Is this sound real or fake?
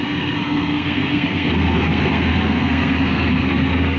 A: fake